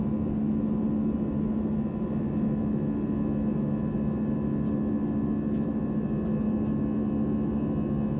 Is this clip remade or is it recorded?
recorded